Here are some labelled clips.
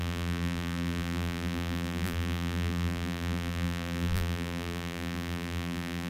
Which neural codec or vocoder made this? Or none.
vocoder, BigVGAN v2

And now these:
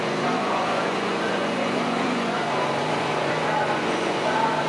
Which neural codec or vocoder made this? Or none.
vocoder, Vocos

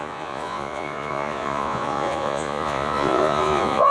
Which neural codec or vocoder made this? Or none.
vocoder, Vocos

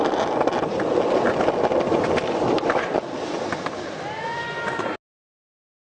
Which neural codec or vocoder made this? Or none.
none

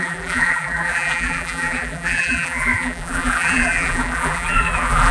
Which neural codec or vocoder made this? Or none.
vocoder, BigVGAN v2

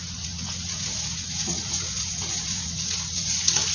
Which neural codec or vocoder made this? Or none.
vocoder, Vocos